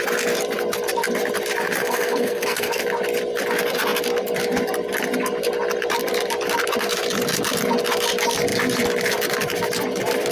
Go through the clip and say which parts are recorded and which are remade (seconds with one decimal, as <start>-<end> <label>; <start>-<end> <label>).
0.0-1.8 recorded; 1.8-2.8 remade; 2.8-10.3 recorded